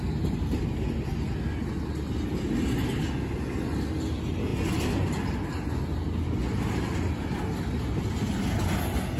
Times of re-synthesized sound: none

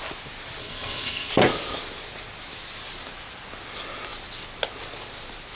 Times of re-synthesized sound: 0.6-1.3

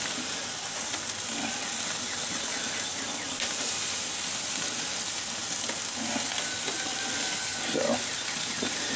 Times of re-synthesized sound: none